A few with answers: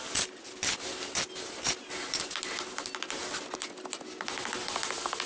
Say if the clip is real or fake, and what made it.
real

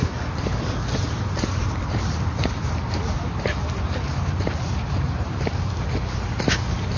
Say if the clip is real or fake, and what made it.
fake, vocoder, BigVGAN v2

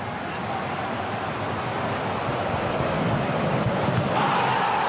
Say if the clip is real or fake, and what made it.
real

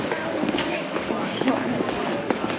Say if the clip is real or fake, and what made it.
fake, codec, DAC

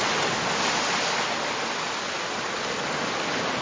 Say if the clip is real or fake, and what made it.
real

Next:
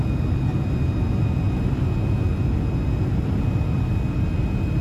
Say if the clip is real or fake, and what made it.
real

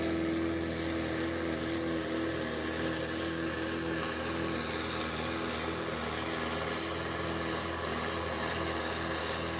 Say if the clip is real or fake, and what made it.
real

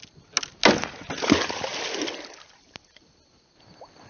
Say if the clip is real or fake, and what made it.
real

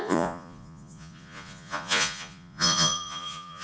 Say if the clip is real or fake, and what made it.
fake, vocoder, Vocos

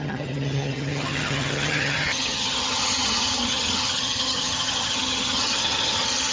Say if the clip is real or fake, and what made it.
fake, vocoder, HiFi-GAN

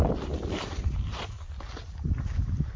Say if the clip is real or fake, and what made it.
real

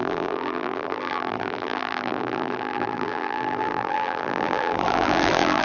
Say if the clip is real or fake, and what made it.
fake, vocoder, BigVGAN v2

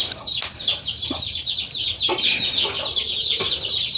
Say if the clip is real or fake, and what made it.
real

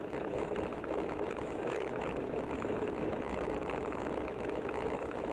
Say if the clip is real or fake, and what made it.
fake, autoencoder, DAC-VAE